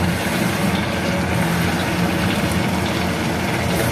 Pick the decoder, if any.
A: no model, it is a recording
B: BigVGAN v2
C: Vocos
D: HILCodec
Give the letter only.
A